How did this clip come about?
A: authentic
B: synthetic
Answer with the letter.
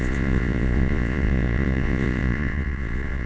B